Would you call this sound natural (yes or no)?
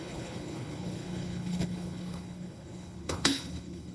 no